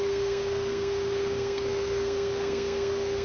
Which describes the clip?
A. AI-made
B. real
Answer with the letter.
A